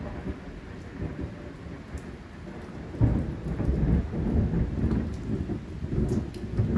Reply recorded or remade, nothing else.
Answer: recorded